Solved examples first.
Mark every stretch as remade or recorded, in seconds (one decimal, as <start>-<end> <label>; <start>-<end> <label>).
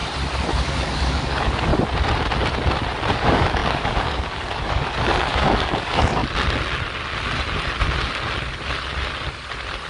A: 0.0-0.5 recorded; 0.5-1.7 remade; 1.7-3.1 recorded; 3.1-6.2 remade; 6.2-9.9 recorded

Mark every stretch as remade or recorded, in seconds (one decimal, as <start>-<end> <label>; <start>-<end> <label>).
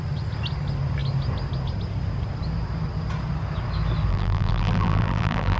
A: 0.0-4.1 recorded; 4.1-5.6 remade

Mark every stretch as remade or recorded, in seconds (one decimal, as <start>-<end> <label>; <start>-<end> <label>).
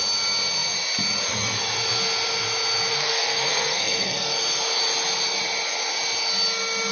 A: 0.0-2.9 recorded; 2.9-4.4 remade; 4.4-6.9 recorded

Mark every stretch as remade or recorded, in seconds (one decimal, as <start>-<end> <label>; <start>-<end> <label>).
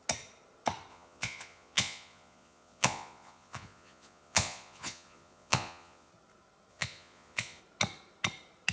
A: 0.0-0.9 recorded; 0.9-6.1 remade; 6.1-6.7 recorded; 6.7-7.6 remade; 7.6-8.7 recorded